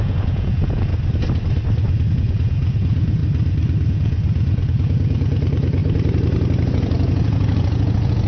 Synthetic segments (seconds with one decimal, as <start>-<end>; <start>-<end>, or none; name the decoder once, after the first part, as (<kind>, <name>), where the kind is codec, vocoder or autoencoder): 0.0-0.9 (vocoder, Vocos); 2.1-3.2; 3.9-5.8; 6.7-8.3